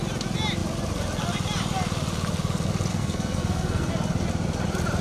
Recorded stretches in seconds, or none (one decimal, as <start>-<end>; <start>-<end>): 0.0-2.9; 3.9-5.0